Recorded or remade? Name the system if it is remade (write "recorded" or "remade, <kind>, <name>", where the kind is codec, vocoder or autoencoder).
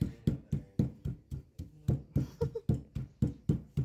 recorded